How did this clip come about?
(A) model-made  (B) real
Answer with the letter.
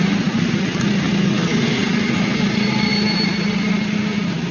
B